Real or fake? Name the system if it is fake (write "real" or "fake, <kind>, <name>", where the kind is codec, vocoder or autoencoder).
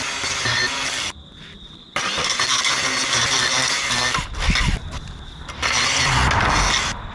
real